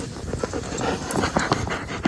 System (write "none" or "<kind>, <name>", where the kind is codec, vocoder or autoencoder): none